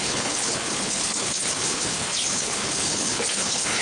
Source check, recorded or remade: remade